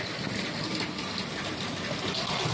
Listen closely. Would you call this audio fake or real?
real